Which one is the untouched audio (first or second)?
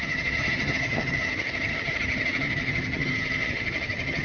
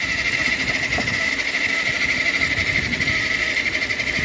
second